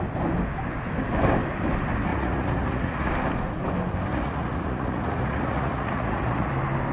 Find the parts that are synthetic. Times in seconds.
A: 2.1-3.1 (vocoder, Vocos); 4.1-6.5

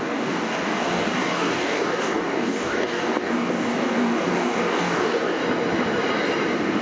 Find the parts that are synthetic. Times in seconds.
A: 0.0-5.4 (codec, DAC)

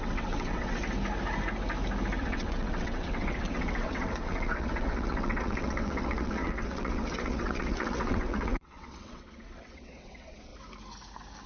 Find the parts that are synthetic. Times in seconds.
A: 0.0-0.8 (vocoder, WaveNeXt); 2.2-10.5